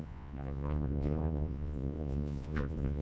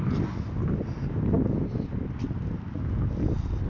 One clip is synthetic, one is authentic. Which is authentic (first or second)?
second